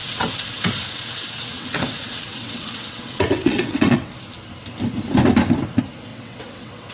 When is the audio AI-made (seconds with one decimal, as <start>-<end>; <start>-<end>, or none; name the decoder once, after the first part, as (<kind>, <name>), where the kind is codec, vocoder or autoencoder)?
0.0-4.1 (vocoder, WaveNeXt); 6.1-6.9